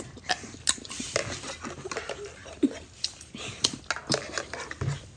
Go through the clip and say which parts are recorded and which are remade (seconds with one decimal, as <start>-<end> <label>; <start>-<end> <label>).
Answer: 0.0-5.2 recorded